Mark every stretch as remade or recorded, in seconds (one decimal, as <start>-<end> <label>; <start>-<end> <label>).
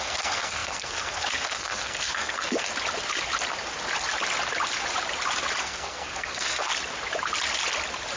0.0-2.7 remade; 2.7-5.6 recorded; 5.6-6.7 remade; 6.7-8.2 recorded